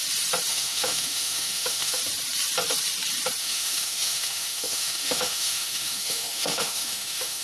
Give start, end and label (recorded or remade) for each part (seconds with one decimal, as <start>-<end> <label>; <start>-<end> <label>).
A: 0.0-0.5 recorded; 0.5-2.0 remade; 2.0-3.4 recorded; 3.4-7.4 remade